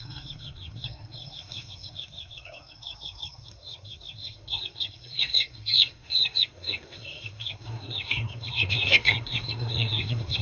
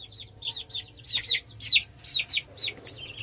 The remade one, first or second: first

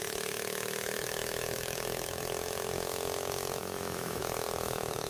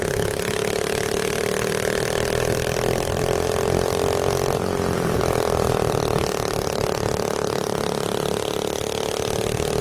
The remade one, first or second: first